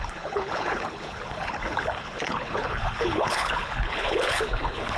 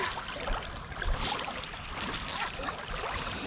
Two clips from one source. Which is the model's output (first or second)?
first